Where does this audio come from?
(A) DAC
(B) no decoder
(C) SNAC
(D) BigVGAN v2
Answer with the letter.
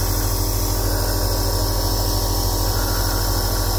B